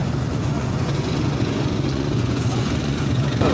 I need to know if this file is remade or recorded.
remade